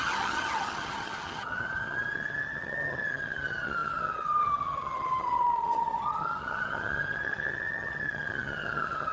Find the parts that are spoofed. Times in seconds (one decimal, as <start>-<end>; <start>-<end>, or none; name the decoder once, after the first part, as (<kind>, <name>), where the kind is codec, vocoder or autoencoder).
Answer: 0.0-9.1 (vocoder, HiFi-GAN)